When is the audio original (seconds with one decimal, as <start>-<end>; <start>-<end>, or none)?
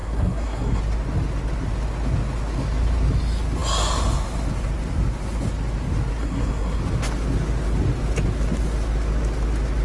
0.8-6.2; 6.8-9.8